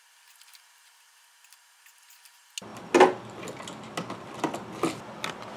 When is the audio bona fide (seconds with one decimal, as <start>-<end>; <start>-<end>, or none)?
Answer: 0.0-5.6